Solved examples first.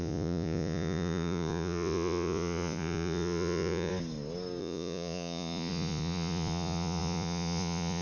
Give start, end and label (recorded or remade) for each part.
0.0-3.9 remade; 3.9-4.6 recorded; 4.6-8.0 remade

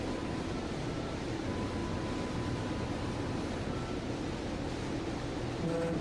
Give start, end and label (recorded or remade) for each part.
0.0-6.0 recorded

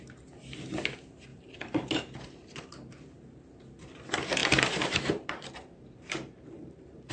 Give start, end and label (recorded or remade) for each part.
0.0-1.3 recorded; 1.3-2.6 remade; 2.6-4.4 recorded; 4.4-7.1 remade

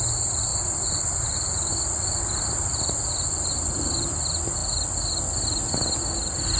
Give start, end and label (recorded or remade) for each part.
0.0-0.5 recorded; 0.5-3.5 remade; 3.5-6.6 recorded

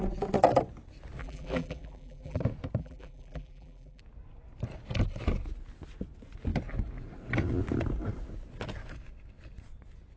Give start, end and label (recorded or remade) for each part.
0.0-1.2 recorded; 1.2-2.4 remade; 2.4-2.8 recorded; 2.8-4.0 remade; 4.0-10.2 recorded

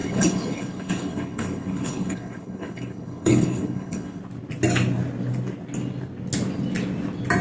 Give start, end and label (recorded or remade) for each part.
0.0-4.2 remade; 4.2-7.4 recorded

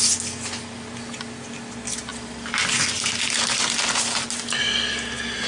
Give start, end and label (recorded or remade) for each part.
0.0-5.5 recorded